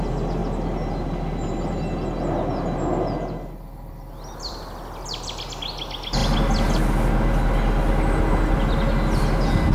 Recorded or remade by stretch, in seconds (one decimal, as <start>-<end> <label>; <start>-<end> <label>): 0.0-9.7 recorded